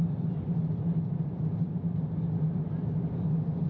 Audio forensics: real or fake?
real